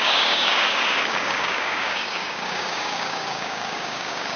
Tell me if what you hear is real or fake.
fake